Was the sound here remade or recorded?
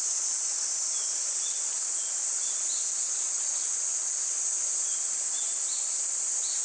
recorded